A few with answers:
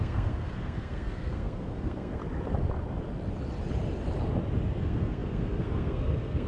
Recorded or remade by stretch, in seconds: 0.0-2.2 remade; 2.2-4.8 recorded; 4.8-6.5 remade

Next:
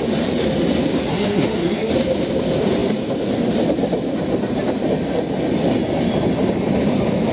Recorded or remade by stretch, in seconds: 0.0-1.1 recorded; 1.1-1.9 remade; 1.9-7.3 recorded

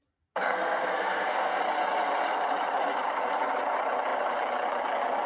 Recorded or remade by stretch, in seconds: 0.0-0.4 recorded; 0.4-1.6 remade; 1.6-5.3 recorded

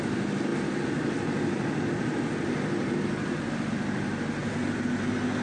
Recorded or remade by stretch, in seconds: 0.0-5.4 recorded